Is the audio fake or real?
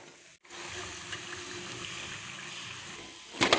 real